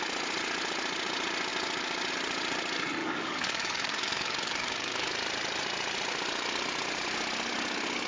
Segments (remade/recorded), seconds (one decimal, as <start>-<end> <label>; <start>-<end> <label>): 0.0-3.0 recorded; 3.0-5.1 remade; 5.1-8.1 recorded